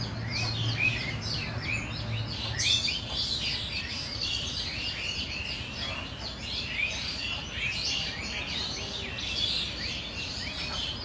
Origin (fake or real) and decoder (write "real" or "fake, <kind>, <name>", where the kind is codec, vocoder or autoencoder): real